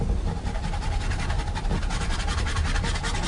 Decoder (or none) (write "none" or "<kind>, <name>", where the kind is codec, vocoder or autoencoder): none